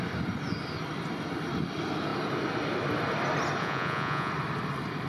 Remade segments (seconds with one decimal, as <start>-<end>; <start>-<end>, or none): 3.6-4.3